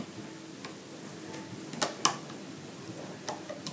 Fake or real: real